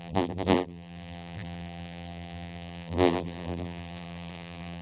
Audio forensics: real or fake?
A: fake